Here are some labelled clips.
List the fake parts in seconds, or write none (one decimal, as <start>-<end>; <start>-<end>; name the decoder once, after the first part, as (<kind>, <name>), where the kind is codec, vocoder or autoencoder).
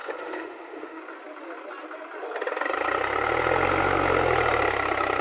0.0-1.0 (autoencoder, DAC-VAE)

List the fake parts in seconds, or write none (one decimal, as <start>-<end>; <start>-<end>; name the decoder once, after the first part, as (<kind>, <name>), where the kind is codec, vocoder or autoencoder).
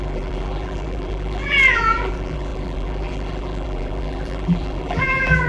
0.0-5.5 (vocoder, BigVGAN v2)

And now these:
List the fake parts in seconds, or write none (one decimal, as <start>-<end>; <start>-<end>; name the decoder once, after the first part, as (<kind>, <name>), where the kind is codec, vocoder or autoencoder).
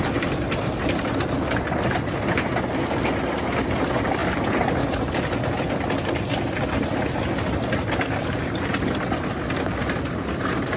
none